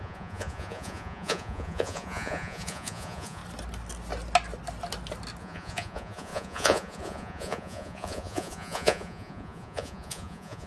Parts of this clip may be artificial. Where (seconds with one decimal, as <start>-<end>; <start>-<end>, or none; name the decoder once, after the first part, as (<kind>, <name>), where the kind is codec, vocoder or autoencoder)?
0.0-3.4 (vocoder, Vocos); 5.4-10.7